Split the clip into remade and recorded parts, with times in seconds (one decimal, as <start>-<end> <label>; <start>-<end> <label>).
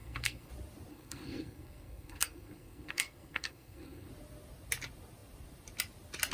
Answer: 0.0-0.5 remade; 0.5-0.9 recorded; 0.9-4.1 remade; 4.1-6.3 recorded